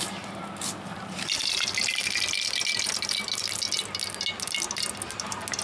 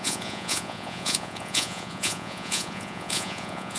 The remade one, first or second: second